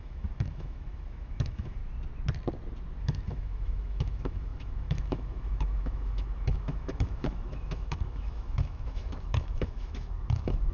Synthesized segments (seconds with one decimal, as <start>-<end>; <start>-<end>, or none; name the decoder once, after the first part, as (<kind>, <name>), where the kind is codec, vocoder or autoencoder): 0.0-1.8 (autoencoder, DAC-VAE); 3.0-10.7